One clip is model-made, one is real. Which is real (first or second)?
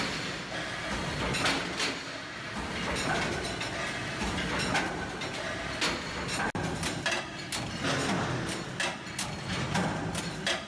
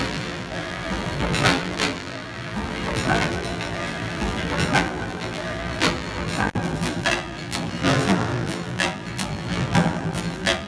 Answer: first